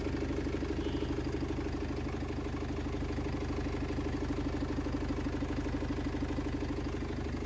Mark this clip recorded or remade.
recorded